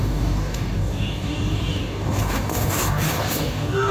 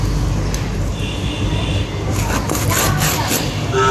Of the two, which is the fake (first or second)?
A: first